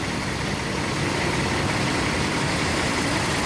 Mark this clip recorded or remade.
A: recorded